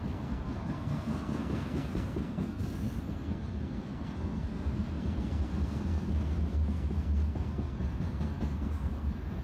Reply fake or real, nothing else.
fake